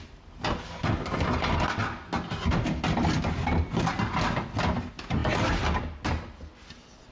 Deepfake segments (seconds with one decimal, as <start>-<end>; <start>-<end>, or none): none